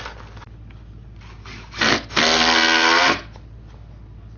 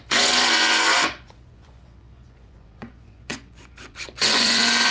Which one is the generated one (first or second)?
second